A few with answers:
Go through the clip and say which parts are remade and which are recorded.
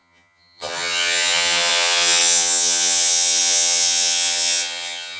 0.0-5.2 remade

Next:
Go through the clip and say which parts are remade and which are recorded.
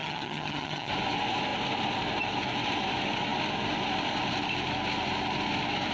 0.0-0.9 remade; 0.9-5.9 recorded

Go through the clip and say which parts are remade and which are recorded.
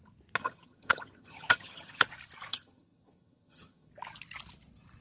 0.0-0.4 recorded; 0.4-2.0 remade; 2.0-2.5 recorded; 2.5-3.9 remade; 3.9-5.0 recorded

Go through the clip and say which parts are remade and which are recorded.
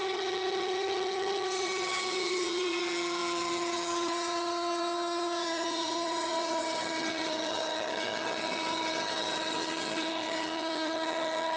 0.0-11.6 remade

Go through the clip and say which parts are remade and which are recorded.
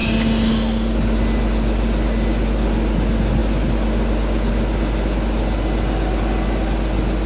0.0-7.3 recorded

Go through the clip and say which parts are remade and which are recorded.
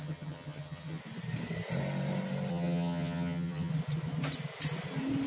0.0-1.0 remade; 1.0-2.5 recorded; 2.5-3.7 remade; 3.7-5.3 recorded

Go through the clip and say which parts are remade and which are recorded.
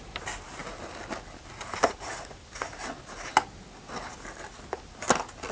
0.0-5.5 recorded